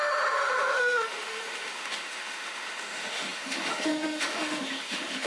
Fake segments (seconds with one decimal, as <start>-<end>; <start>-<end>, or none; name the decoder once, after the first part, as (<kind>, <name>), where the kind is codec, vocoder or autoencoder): 0.0-5.3 (autoencoder, DAC-VAE)